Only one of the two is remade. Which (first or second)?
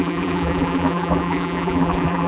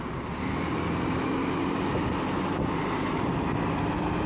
first